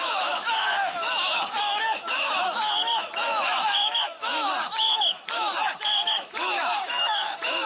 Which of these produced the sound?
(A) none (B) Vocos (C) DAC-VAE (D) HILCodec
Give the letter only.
C